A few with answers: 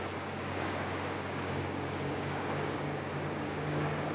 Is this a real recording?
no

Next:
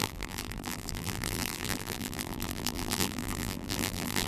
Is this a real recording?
no